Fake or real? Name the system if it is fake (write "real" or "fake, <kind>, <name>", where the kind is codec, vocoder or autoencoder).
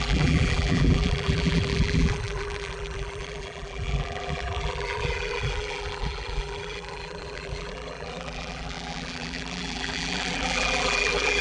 fake, vocoder, BigVGAN v2